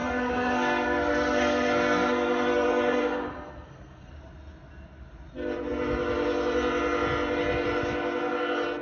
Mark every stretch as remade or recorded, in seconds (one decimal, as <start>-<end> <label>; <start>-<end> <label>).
0.0-4.1 remade; 4.1-8.8 recorded